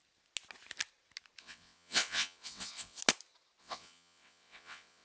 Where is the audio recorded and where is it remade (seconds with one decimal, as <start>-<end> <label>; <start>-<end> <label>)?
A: 0.0-1.4 recorded; 1.4-3.0 remade; 3.0-3.6 recorded; 3.6-5.0 remade